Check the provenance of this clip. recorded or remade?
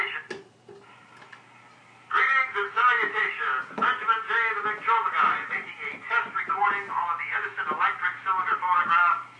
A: recorded